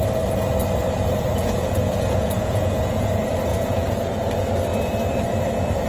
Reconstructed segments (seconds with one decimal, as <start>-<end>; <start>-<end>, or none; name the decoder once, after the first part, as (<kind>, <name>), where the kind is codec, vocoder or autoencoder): 1.4-3.1 (vocoder, Vocos); 3.5-4.3